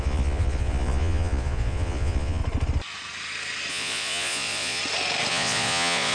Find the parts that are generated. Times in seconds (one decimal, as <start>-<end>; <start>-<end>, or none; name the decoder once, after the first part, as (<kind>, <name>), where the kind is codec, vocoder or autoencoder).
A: 0.0-2.4 (vocoder, Vocos); 3.7-4.8; 5.3-6.1